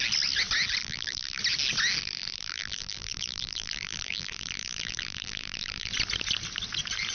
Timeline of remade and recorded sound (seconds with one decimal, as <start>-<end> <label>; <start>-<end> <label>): 0.0-0.8 recorded; 0.8-1.4 remade; 1.4-2.0 recorded; 2.0-5.9 remade; 5.9-7.1 recorded

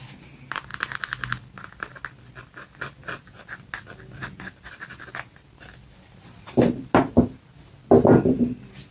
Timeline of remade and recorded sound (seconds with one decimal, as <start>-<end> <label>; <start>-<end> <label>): 0.0-8.9 recorded